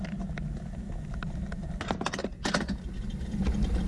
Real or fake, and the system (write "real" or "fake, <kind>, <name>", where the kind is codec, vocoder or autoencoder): real